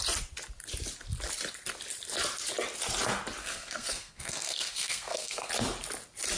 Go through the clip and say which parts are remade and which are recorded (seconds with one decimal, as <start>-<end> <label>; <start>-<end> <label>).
0.0-3.4 recorded; 3.4-5.5 remade; 5.5-6.4 recorded